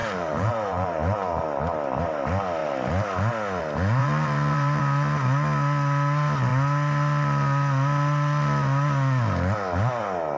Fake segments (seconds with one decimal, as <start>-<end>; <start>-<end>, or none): 0.0-1.4; 4.0-4.8